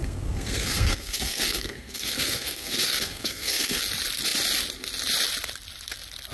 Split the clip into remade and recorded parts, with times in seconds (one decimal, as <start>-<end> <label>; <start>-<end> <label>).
0.0-3.8 remade; 3.8-6.3 recorded